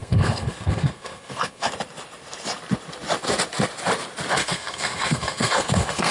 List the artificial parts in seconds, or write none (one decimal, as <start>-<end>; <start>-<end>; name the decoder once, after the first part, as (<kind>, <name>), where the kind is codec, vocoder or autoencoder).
0.0-1.7 (codec, SNAC); 4.4-6.1